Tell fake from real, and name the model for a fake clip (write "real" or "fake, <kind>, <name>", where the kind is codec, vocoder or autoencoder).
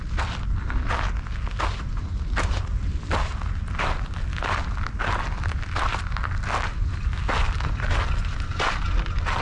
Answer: real